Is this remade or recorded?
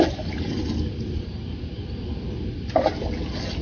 recorded